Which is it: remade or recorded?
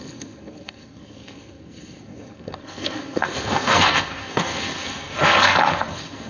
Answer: remade